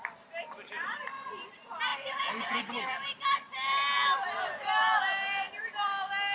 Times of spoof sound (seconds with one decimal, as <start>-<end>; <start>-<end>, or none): 0.0-6.3